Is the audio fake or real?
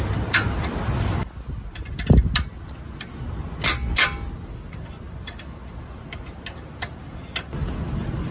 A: real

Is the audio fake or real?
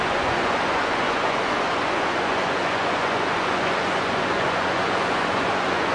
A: fake